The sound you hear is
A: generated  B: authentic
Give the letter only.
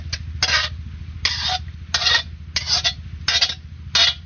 B